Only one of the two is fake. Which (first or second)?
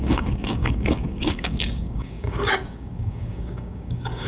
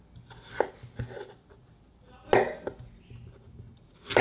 first